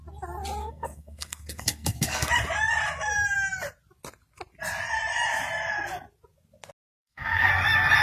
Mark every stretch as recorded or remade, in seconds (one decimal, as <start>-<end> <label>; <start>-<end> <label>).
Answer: 0.0-0.6 recorded; 0.6-2.3 remade; 2.3-7.0 recorded; 7.0-7.5 remade; 7.5-8.0 recorded